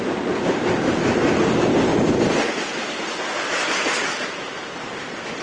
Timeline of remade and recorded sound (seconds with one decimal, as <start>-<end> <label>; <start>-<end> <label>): 0.0-5.4 remade